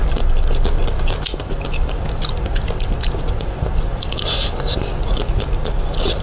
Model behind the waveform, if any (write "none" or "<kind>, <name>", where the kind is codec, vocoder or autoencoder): none